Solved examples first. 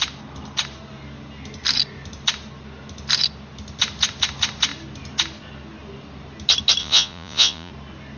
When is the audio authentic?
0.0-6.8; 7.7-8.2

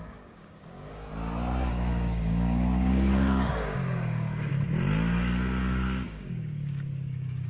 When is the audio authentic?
1.1-1.7; 4.5-5.6